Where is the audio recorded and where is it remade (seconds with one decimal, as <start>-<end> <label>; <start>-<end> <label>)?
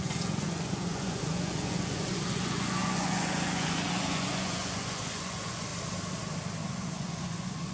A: 0.0-5.7 remade; 5.7-6.7 recorded; 6.7-7.7 remade